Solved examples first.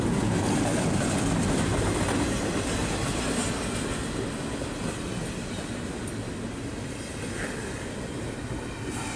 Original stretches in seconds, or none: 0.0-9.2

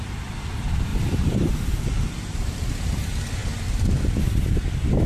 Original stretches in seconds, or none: 0.0-0.9; 1.5-3.4; 4.2-5.1

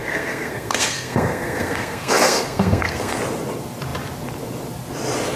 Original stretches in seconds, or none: 3.2-5.4